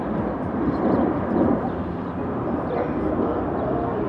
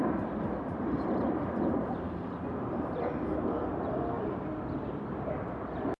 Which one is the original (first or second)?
first